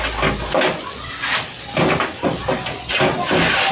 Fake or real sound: real